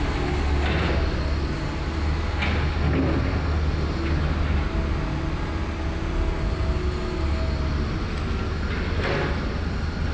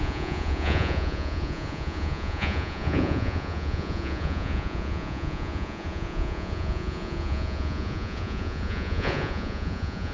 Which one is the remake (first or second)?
second